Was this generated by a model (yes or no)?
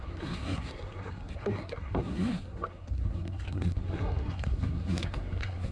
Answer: yes